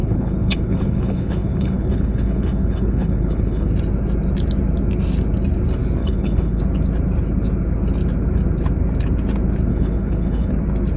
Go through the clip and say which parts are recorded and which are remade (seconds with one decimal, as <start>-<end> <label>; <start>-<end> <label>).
0.0-3.7 remade; 3.7-6.0 recorded; 6.0-6.6 remade; 6.6-9.7 recorded; 9.7-10.5 remade; 10.5-11.0 recorded